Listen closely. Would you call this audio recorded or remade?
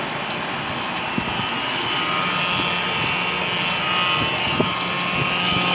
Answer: recorded